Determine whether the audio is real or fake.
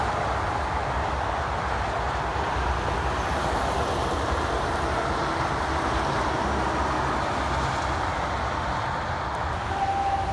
real